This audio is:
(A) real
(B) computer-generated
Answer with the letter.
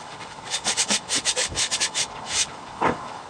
B